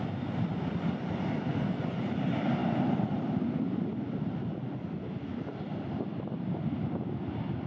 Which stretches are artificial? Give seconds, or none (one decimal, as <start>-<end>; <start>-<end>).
none